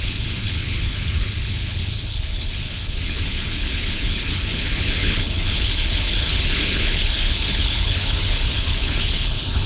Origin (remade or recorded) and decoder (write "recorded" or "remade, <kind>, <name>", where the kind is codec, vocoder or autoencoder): remade, codec, HILCodec